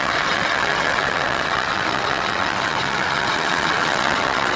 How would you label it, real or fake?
fake